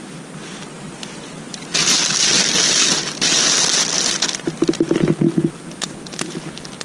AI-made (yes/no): no